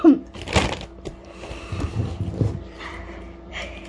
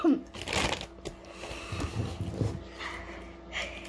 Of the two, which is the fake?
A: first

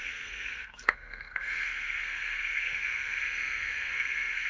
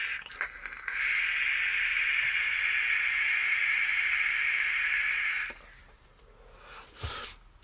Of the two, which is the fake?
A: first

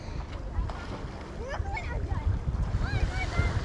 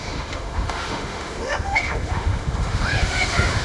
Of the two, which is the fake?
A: second